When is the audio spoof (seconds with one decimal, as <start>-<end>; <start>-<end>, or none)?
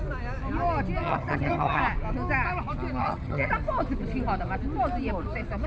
1.0-1.8; 3.0-3.5